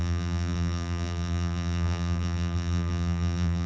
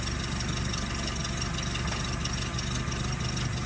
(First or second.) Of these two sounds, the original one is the second